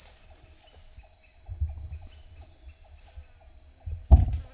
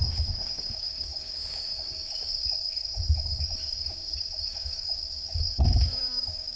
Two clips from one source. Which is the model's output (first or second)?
second